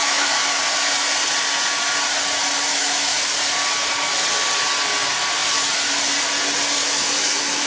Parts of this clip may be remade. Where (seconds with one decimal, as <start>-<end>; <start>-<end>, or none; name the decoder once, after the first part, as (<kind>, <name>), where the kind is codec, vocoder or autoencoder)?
0.0-0.6 (autoencoder, DAC-VAE); 2.7-3.2; 6.8-7.7